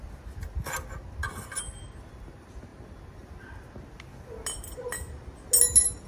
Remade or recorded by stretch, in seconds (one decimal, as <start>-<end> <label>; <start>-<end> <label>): 0.0-6.1 recorded